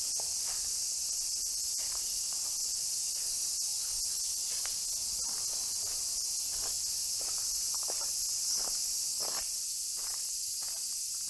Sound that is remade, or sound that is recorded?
recorded